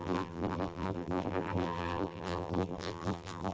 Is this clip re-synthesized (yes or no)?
yes